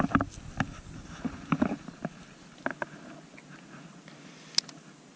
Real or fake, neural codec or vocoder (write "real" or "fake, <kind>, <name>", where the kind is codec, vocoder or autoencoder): real